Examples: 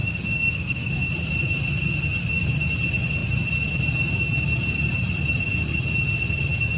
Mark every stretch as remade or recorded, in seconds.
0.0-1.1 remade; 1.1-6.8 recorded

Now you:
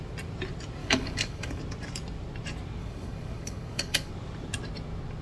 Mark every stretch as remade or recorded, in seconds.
0.0-0.8 recorded; 0.8-1.6 remade; 1.6-2.8 recorded; 2.8-4.1 remade; 4.1-5.2 recorded